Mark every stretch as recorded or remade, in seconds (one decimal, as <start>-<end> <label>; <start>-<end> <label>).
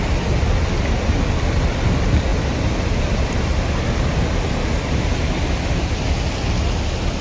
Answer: 0.0-7.2 recorded